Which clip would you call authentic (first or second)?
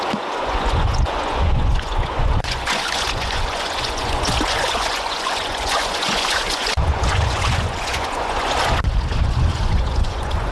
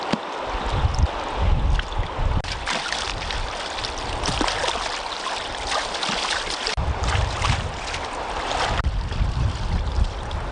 second